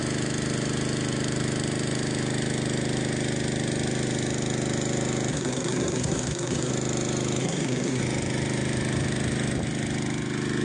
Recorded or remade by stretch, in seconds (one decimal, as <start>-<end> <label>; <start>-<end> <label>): 0.0-5.3 recorded; 5.3-6.7 remade; 6.7-7.4 recorded; 7.4-8.0 remade; 8.0-10.6 recorded